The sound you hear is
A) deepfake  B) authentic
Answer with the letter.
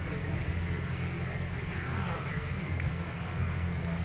A